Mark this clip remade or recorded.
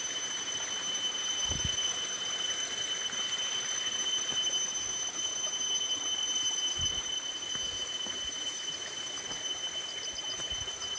recorded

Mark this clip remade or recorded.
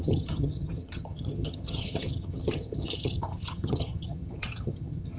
remade